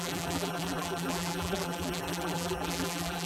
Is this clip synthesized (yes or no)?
yes